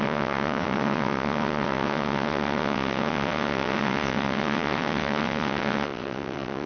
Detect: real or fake fake